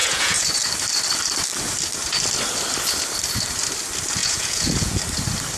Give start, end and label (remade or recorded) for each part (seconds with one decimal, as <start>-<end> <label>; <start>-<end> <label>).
0.0-0.6 remade; 0.6-4.2 recorded; 4.2-5.0 remade; 5.0-5.6 recorded